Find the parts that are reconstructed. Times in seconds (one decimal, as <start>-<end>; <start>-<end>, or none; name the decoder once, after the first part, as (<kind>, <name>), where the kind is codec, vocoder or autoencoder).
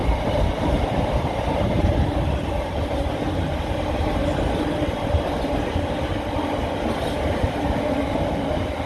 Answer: 0.0-4.2 (vocoder, BigVGAN v2)